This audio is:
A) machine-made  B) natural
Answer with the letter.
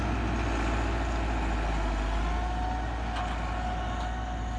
B